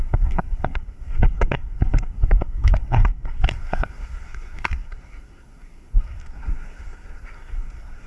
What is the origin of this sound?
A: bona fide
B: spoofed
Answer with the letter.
B